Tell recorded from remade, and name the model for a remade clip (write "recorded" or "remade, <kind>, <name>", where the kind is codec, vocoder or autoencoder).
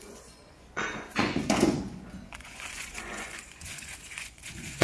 remade, vocoder, Vocos